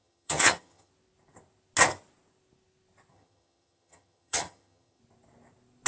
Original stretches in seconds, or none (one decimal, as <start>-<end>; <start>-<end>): 0.9-3.1; 5.0-5.9